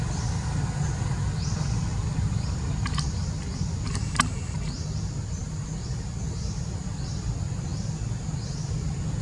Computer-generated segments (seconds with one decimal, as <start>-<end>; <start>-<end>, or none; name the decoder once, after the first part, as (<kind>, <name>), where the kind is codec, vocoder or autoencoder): 1.9-2.6 (vocoder, BigVGAN v2); 5.4-6.8